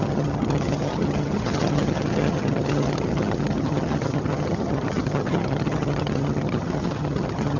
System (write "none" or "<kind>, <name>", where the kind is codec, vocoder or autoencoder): vocoder, HiFi-GAN